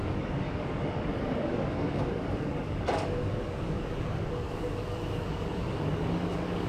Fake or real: fake